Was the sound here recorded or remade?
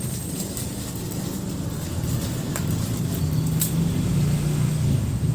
recorded